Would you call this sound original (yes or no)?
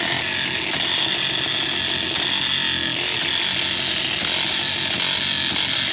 yes